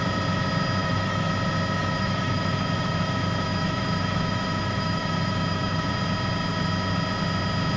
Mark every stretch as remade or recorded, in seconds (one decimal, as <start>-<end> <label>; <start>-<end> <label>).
0.0-0.8 recorded; 0.8-1.3 remade; 1.3-1.8 recorded; 1.8-5.9 remade; 5.9-7.8 recorded